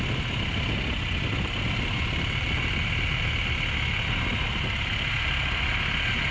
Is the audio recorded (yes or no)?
yes